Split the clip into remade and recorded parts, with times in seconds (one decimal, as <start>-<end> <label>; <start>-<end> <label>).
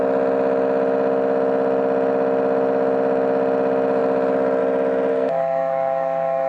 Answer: 0.0-5.1 recorded; 5.1-6.5 remade